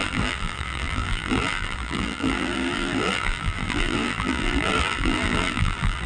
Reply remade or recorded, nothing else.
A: remade